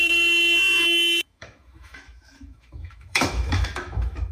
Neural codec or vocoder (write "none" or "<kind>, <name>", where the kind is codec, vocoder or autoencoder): autoencoder, DAC-VAE